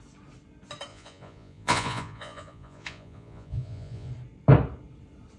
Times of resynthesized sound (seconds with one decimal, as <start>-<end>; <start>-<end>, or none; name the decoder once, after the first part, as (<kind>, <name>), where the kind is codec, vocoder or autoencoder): 0.9-4.1 (vocoder, Vocos)